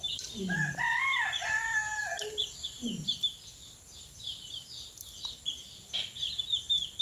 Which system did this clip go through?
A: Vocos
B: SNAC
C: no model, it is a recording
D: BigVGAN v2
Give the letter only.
C